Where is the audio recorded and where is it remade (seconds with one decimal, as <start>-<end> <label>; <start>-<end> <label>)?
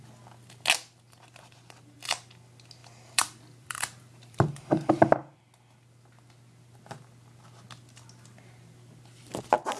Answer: 0.0-2.8 recorded; 2.8-5.4 remade; 5.4-9.8 recorded